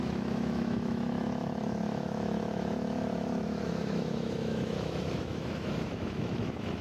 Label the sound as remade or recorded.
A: remade